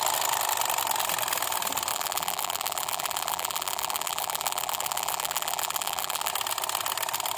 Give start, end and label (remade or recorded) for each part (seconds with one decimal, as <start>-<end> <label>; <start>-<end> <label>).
0.0-1.9 recorded; 1.9-6.3 remade; 6.3-7.4 recorded